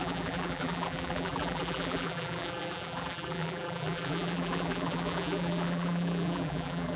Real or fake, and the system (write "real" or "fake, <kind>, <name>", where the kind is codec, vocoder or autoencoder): fake, vocoder, BigVGAN v2